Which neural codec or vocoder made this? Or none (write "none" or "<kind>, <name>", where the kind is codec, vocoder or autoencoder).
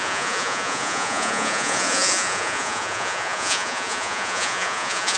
vocoder, Vocos